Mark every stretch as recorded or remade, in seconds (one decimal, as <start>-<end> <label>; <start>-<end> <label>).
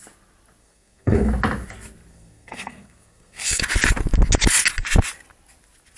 0.0-0.6 recorded; 0.6-1.3 remade; 1.3-2.1 recorded; 2.1-3.6 remade; 3.6-6.0 recorded